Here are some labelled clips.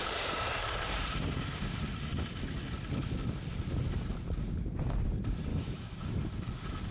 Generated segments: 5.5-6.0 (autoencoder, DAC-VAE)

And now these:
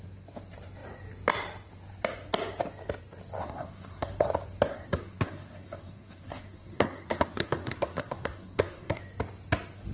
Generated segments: 3.4-4.3 (codec, SNAC); 4.7-9.0

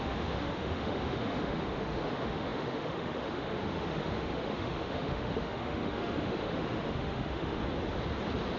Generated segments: 0.0-7.6 (autoencoder, DAC-VAE)

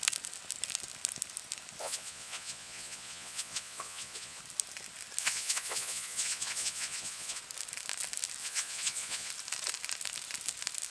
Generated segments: 1.8-4.4 (vocoder, Vocos); 5.2-7.4; 8.4-9.3